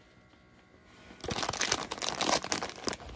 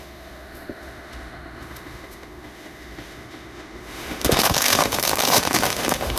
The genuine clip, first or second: first